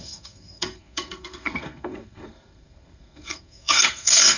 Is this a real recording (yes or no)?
no